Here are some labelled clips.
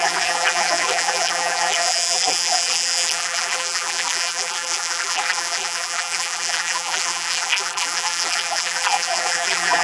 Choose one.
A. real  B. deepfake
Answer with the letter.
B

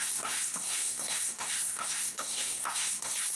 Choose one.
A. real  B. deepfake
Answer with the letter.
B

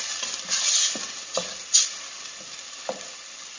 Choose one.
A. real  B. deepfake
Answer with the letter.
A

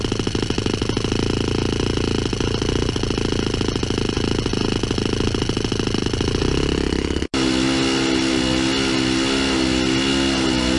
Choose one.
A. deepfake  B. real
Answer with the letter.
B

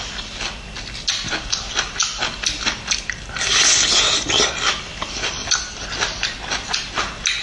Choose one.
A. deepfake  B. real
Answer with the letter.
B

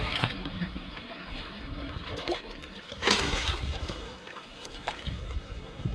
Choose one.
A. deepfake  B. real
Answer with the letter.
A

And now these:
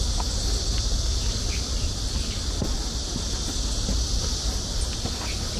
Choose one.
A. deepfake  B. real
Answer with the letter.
B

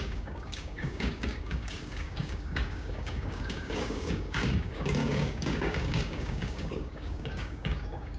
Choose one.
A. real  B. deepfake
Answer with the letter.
B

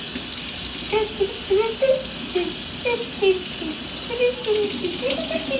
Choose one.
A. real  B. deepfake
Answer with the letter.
A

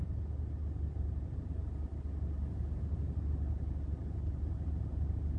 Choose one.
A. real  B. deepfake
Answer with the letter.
A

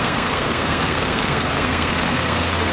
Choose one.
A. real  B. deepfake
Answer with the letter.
B